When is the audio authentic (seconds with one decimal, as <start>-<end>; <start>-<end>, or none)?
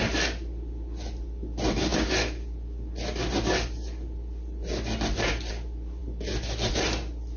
0.0-7.4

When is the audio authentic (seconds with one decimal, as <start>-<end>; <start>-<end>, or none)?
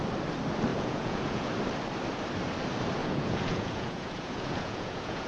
0.0-0.7; 1.5-3.0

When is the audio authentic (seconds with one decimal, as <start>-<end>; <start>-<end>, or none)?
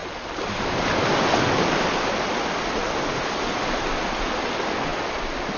0.0-5.6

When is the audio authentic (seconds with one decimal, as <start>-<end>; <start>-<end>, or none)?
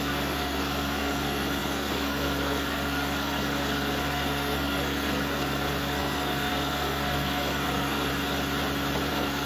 8.1-9.1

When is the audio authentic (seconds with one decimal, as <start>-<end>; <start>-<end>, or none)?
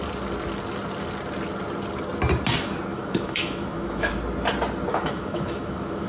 0.0-2.9; 4.1-4.9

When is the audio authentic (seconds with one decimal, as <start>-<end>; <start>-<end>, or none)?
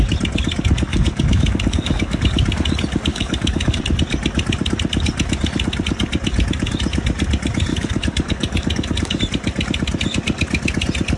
0.0-0.9; 2.2-3.1; 3.8-7.7; 9.2-11.2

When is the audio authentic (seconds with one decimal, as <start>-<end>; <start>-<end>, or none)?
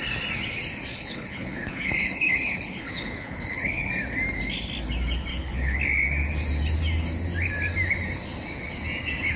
0.0-0.9; 3.9-5.3; 5.8-9.4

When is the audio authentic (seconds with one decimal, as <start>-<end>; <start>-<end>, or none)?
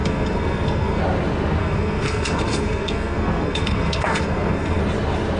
1.0-1.6; 4.8-5.4